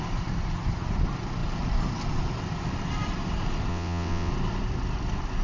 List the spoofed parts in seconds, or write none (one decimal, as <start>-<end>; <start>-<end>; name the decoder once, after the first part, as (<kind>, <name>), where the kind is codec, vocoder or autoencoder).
3.7-4.3 (vocoder, WaveNeXt)